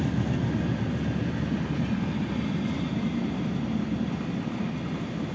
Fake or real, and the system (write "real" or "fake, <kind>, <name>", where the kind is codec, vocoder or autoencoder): real